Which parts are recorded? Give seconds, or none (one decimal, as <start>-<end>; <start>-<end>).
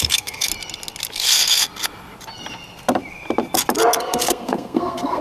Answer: 0.5-1.1; 1.7-4.0